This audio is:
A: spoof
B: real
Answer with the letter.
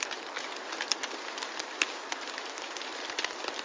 B